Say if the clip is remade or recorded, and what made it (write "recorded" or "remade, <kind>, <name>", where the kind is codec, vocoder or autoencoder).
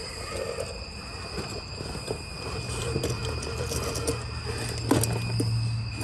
recorded